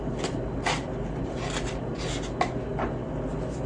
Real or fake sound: real